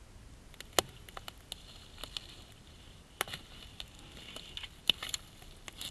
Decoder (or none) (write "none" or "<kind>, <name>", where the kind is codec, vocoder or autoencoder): none